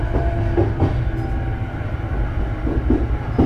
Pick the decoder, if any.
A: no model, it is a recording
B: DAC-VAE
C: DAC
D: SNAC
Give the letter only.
A